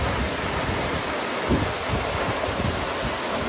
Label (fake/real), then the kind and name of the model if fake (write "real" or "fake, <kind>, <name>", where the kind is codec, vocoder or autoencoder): real